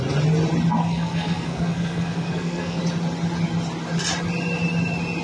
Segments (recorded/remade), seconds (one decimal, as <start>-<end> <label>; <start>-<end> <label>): 0.0-0.8 recorded; 0.8-2.8 remade; 2.8-5.2 recorded